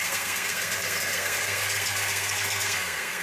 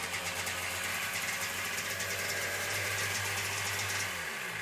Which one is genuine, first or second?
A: second